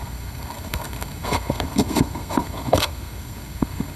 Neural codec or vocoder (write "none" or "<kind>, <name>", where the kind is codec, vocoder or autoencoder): codec, SNAC